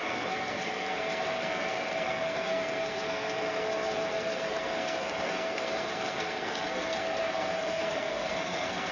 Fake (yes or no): yes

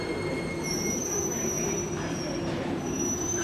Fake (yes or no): yes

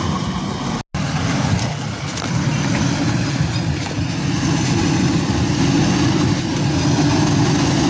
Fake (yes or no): no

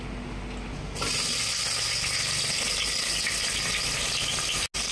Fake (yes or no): no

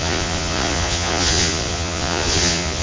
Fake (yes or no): yes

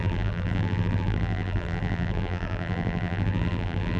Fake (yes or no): yes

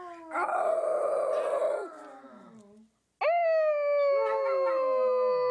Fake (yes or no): no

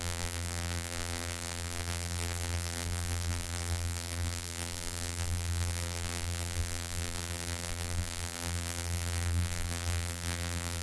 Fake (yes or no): yes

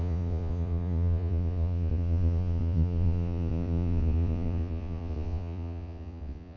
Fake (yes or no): yes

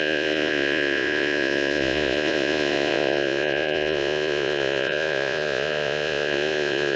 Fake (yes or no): yes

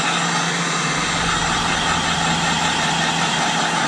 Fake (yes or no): no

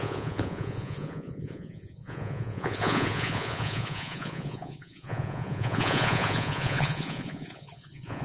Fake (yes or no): yes